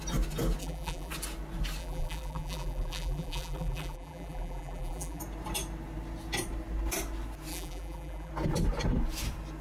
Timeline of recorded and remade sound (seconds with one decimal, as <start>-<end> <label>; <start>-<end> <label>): 0.0-0.6 recorded; 0.6-1.1 remade; 1.1-1.8 recorded; 1.8-5.2 remade; 5.2-7.5 recorded; 7.5-8.3 remade; 8.3-9.6 recorded

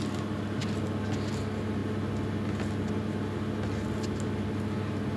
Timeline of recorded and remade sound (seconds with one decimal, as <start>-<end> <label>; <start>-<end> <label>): 0.0-5.2 recorded